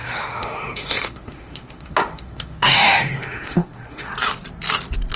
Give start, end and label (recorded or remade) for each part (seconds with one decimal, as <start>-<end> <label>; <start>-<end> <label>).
0.0-4.1 remade; 4.1-5.2 recorded